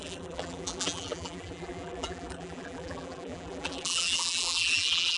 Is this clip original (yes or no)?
no